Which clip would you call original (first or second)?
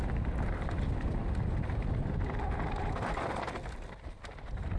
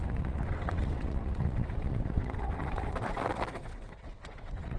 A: first